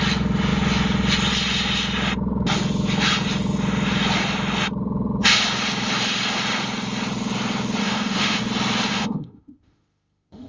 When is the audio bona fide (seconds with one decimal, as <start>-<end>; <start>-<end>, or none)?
0.0-7.8; 8.4-8.9